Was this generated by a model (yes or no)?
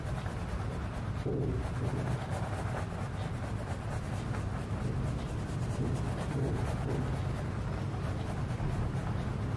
no